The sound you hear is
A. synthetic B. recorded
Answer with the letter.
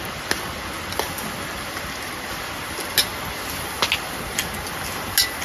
B